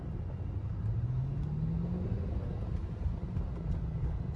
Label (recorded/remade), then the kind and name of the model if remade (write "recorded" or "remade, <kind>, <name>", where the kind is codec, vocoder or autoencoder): recorded